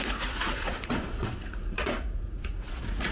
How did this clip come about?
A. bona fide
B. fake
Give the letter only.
B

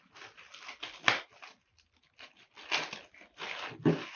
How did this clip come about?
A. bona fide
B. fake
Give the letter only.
A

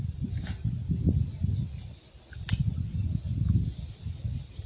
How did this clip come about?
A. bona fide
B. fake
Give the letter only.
A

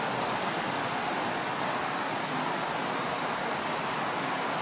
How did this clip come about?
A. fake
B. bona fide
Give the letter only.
B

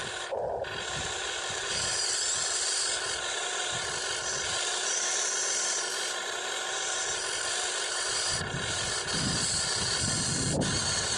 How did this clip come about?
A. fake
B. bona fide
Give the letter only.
B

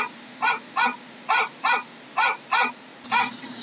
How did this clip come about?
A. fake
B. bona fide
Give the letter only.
A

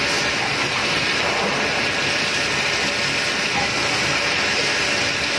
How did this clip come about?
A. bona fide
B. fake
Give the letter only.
A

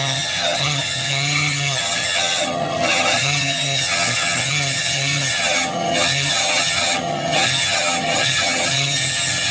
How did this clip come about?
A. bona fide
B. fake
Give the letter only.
B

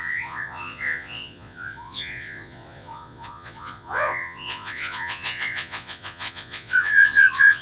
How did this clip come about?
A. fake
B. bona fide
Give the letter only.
A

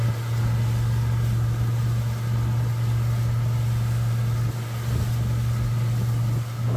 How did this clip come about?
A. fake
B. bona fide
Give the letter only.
B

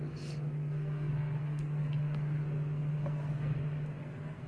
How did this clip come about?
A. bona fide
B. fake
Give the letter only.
B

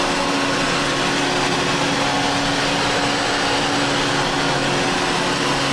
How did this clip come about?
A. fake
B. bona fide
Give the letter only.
B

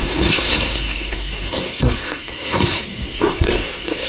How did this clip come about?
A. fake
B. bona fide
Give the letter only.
A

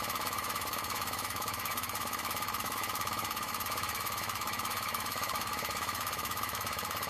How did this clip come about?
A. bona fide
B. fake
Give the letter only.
B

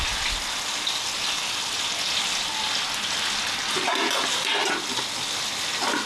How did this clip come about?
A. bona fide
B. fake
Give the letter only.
A